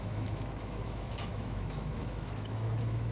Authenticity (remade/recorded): remade